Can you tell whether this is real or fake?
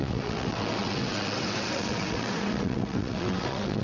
fake